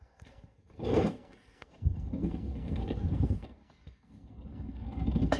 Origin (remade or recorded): remade